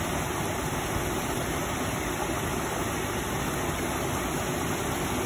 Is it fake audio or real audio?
real